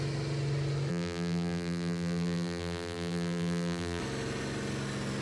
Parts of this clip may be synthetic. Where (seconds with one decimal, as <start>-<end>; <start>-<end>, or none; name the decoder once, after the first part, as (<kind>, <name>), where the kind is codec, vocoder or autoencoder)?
0.9-4.0 (vocoder, BigVGAN v2)